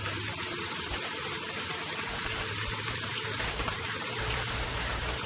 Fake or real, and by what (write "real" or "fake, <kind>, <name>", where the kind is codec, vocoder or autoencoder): fake, vocoder, BigVGAN v2